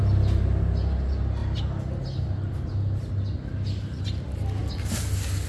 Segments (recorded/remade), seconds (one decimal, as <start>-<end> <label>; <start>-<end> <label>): 0.0-5.5 recorded